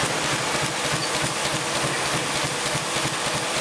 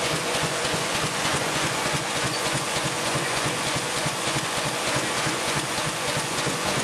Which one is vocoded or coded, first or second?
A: second